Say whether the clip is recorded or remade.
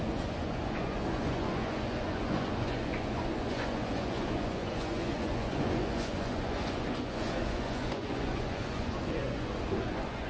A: remade